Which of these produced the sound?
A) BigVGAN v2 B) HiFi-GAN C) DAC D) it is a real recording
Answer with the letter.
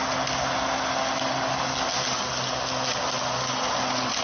D